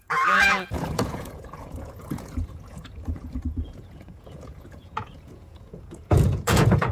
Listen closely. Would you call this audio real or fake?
fake